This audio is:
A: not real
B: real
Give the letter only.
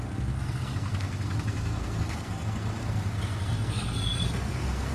A